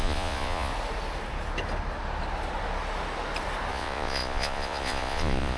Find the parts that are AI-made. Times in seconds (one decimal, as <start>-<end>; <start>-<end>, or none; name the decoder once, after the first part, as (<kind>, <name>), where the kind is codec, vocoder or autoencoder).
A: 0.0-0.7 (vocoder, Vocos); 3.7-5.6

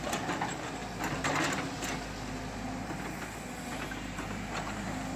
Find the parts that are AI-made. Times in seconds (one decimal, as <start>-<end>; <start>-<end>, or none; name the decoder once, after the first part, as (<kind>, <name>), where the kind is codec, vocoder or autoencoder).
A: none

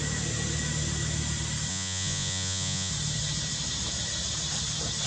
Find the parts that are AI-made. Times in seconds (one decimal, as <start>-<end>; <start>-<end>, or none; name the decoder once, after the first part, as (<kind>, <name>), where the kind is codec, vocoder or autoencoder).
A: 1.7-2.9 (vocoder, Vocos)

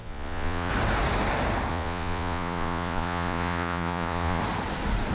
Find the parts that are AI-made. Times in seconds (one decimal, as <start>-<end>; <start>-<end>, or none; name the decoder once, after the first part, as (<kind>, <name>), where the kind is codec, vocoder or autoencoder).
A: 0.0-0.7 (vocoder, Vocos); 1.7-4.4